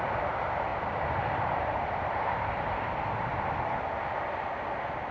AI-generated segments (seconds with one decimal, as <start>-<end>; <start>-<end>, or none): 0.7-3.8